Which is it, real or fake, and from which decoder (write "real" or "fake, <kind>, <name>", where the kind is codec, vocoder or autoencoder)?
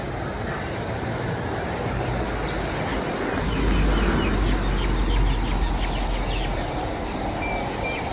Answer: real